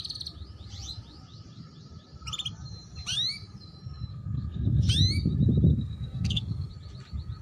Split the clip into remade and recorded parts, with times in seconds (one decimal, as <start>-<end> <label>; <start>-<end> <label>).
0.0-4.1 recorded; 4.1-4.9 remade; 4.9-5.7 recorded; 5.7-6.7 remade; 6.7-7.4 recorded